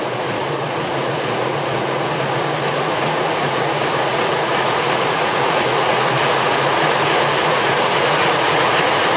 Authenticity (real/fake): fake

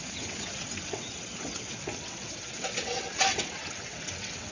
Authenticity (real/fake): fake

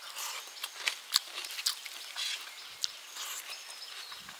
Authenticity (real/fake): real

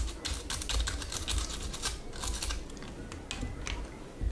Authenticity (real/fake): real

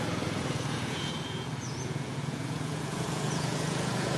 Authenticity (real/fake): fake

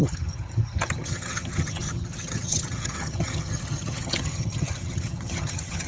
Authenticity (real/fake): fake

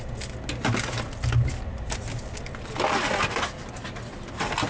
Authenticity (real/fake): real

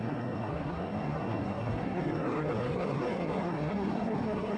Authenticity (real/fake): fake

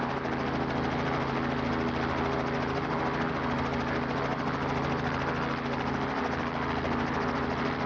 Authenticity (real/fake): real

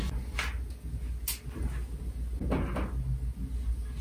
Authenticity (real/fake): real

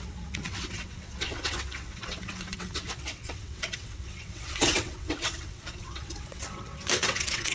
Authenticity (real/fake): fake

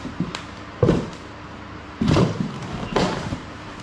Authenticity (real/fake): fake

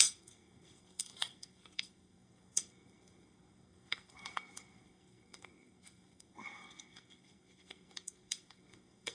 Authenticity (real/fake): fake